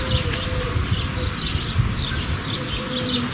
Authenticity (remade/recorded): recorded